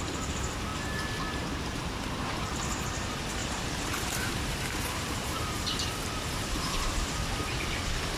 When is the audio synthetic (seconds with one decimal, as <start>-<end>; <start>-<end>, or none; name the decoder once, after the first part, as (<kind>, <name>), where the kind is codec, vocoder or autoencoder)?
3.4-6.9 (vocoder, BigVGAN v2)